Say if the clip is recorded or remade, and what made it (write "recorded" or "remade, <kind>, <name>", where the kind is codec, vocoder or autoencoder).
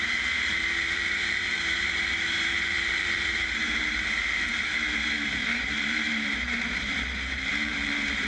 remade, vocoder, BigVGAN v2